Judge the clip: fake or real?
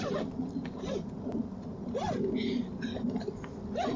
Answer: real